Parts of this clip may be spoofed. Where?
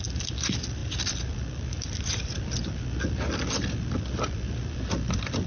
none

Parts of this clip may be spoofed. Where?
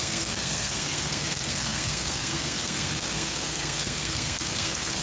0.0-5.0 (codec, SNAC)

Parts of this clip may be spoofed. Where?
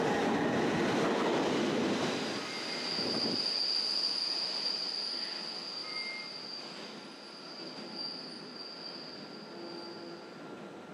none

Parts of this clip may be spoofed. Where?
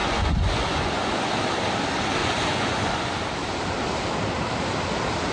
0.0-1.3 (vocoder, Vocos); 2.2-3.1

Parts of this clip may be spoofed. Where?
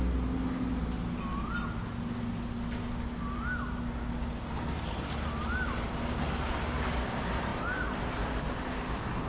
none